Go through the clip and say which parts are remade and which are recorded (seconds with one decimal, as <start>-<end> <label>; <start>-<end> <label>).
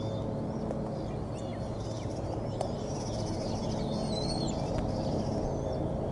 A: 0.0-1.5 recorded; 1.5-3.6 remade; 3.6-4.4 recorded; 4.4-5.3 remade; 5.3-6.1 recorded